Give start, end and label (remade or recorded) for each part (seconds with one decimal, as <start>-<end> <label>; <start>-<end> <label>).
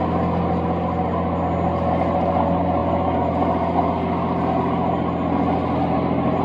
0.0-6.4 recorded